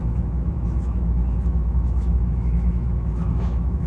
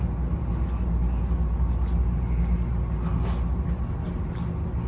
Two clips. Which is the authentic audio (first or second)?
second